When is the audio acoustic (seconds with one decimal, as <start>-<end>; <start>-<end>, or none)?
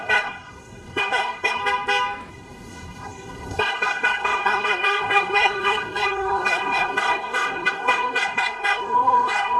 1.6-2.3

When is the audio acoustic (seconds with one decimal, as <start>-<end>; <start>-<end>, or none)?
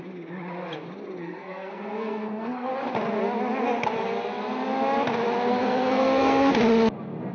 0.0-1.2; 2.7-5.5; 6.5-7.3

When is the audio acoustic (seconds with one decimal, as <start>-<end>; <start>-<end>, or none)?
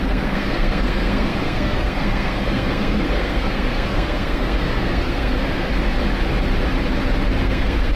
5.7-7.4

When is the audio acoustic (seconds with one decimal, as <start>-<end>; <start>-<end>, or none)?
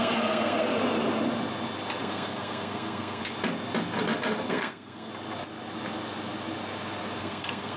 0.7-2.0; 3.2-4.5; 5.1-7.2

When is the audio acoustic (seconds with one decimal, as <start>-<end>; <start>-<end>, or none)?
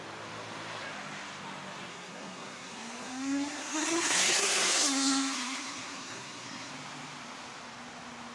0.0-1.9; 6.7-8.3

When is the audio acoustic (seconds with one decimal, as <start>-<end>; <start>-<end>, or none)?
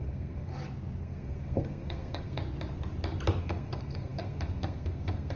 0.5-1.0; 2.4-3.4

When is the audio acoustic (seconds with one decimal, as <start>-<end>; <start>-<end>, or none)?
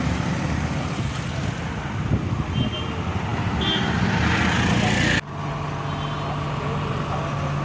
0.0-7.6